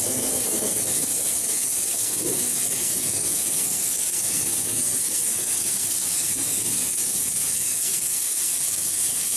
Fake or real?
fake